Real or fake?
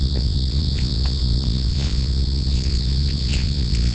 fake